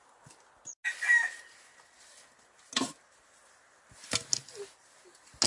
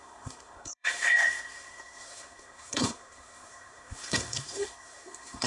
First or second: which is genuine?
first